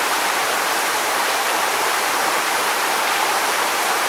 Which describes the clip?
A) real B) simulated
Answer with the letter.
B